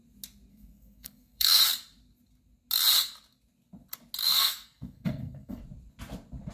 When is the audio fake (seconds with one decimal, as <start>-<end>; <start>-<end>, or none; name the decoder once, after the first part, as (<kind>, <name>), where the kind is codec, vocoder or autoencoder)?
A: 0.5-1.6 (codec, SNAC); 4.2-5.6